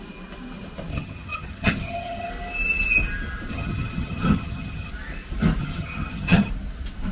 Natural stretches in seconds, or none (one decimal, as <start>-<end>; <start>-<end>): 0.0-0.9; 2.3-3.5; 4.9-5.6; 6.5-7.1